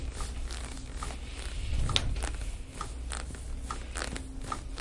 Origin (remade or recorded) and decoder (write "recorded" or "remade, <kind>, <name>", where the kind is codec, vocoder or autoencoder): recorded